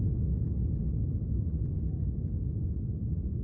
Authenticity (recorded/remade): recorded